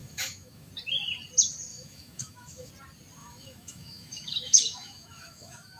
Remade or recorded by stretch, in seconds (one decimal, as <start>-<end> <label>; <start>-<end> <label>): 0.0-0.7 remade; 0.7-1.7 recorded; 1.7-2.7 remade; 2.7-3.2 recorded; 3.2-5.8 remade